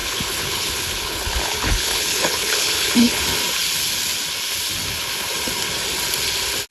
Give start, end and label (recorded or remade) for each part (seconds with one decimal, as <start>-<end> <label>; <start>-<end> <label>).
0.0-3.2 remade; 3.2-6.7 recorded